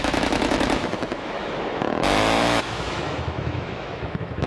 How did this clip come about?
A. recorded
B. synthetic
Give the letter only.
B